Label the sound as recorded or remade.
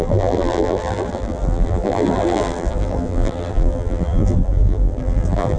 remade